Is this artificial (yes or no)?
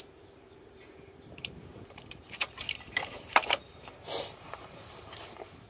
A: yes